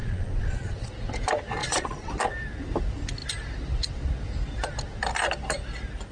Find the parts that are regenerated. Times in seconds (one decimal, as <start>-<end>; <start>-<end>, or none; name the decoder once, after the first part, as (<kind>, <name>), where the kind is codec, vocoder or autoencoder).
0.0-0.9 (vocoder, Vocos); 1.6-2.1